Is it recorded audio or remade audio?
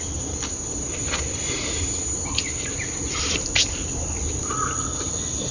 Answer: recorded